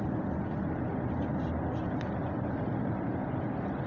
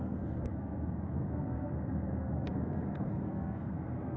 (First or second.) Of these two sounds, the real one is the first